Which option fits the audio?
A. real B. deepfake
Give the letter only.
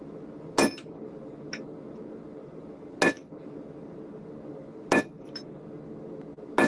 A